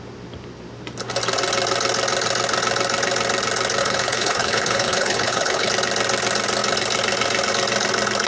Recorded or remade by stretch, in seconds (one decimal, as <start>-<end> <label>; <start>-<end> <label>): 0.0-3.8 recorded; 3.8-5.7 remade; 5.7-8.3 recorded